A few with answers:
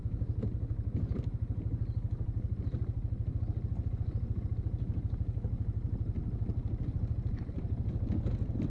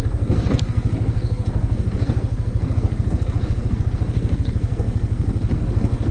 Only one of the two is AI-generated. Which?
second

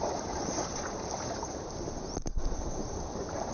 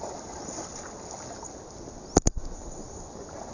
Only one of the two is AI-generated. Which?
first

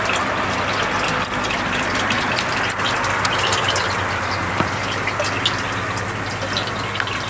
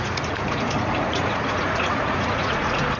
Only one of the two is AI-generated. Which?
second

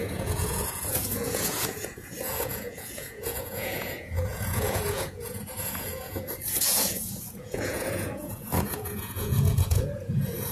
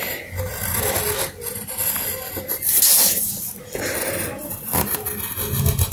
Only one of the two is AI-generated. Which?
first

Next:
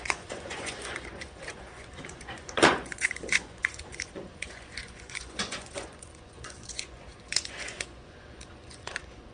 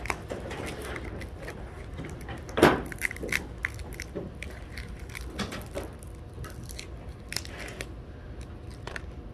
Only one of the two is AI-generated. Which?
first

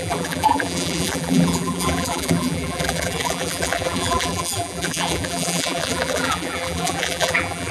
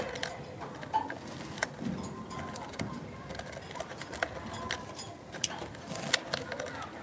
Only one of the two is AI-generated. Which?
first